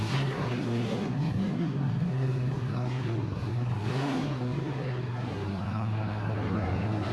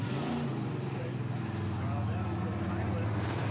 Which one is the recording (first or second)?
second